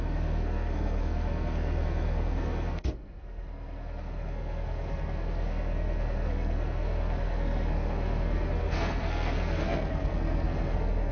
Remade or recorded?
remade